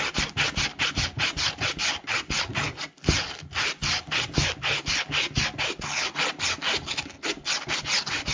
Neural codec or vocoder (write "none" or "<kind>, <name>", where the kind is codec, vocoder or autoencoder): none